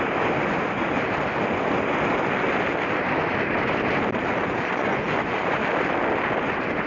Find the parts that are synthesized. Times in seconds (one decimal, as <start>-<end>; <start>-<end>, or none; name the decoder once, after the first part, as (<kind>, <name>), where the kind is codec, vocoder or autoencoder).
4.4-5.6 (vocoder, Vocos)